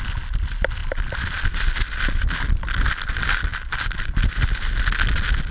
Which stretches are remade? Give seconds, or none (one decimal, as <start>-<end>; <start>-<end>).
none